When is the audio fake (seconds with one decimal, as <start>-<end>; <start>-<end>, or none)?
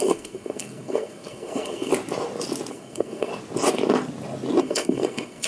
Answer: 0.0-1.9; 2.7-3.3; 4.6-5.5